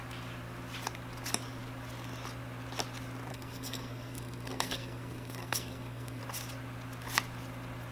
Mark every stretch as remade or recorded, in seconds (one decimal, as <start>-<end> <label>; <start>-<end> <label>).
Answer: 0.0-3.3 recorded; 3.3-6.2 remade; 6.2-7.9 recorded